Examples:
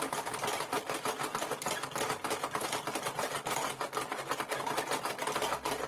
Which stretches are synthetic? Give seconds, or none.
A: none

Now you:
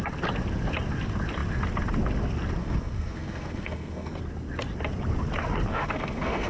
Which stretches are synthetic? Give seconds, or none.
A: 2.6-4.2; 5.7-6.5